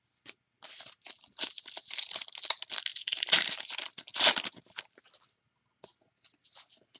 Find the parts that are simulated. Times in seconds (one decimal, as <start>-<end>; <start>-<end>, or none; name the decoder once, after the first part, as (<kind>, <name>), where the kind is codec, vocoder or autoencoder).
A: 2.9-5.0 (vocoder, BigVGAN v2)